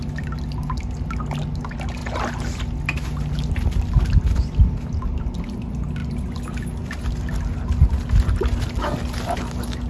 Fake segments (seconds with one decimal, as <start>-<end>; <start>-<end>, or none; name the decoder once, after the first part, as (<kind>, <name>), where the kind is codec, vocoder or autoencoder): none